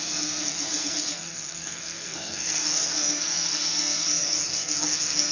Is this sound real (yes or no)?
no